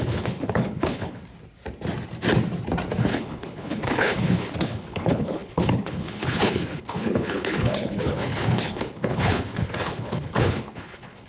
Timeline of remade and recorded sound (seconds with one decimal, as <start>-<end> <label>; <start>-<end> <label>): 0.0-1.2 remade; 1.2-3.0 recorded; 3.0-11.3 remade